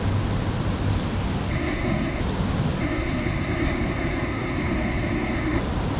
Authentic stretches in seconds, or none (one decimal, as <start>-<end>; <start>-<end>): 0.0-1.5; 2.2-2.8; 5.6-6.0